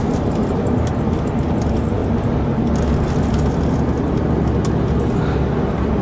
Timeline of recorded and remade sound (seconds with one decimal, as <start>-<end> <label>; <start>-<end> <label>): 0.0-2.0 remade; 2.0-5.6 recorded; 5.6-6.0 remade